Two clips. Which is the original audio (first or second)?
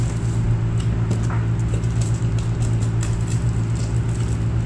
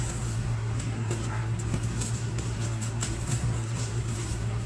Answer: first